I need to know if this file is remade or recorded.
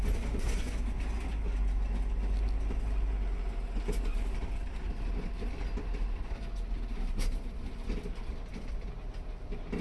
recorded